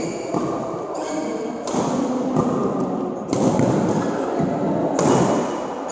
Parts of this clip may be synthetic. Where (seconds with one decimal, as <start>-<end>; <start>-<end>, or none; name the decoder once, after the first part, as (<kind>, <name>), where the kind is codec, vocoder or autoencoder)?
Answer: none